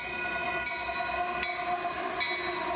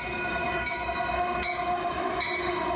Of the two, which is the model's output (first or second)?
second